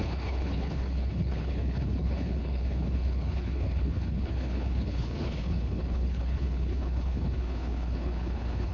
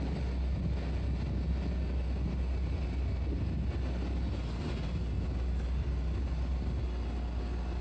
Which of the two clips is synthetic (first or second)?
first